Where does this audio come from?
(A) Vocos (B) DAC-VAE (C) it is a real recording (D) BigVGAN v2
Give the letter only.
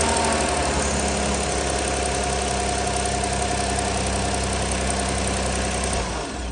C